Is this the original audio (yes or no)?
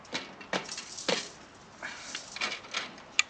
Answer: yes